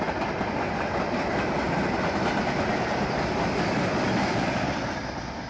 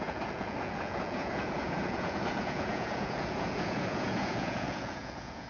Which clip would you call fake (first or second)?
second